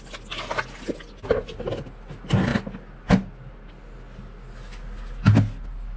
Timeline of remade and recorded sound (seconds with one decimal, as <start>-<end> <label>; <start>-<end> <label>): 0.0-6.0 recorded